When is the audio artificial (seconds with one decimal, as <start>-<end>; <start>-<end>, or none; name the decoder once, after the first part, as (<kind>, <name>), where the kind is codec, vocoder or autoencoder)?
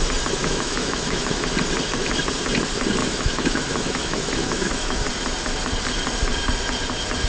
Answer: 0.4-1.5 (autoencoder, DAC-VAE); 3.0-5.0